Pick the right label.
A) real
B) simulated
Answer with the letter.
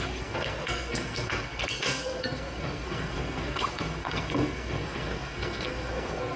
B